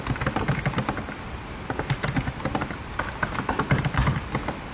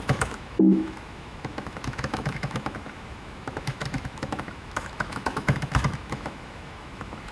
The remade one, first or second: second